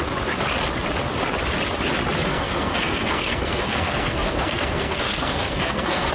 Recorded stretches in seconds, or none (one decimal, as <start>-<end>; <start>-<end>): 0.0-2.3

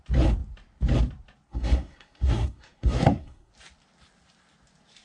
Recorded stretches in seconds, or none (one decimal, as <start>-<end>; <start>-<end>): 0.0-1.5; 3.5-5.0